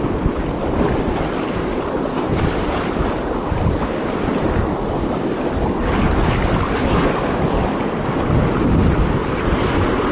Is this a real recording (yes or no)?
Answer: yes